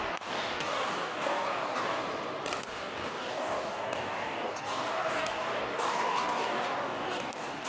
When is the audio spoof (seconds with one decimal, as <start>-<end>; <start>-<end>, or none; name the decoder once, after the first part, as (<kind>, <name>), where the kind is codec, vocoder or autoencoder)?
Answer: 0.0-2.0 (codec, DAC); 2.6-7.7